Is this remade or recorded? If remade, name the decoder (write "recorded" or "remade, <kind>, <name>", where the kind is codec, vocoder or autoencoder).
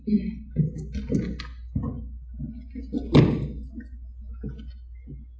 recorded